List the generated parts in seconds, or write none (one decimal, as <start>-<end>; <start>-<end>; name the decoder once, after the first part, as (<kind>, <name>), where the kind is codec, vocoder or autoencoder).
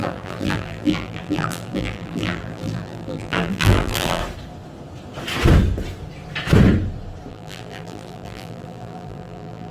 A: 0.0-4.2 (vocoder, BigVGAN v2); 7.3-9.7